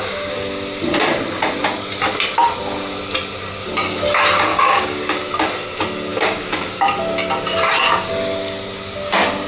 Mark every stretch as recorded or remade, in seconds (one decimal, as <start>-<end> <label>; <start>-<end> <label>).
0.0-4.5 recorded; 4.5-5.3 remade; 5.3-6.1 recorded; 6.1-6.8 remade; 6.8-9.5 recorded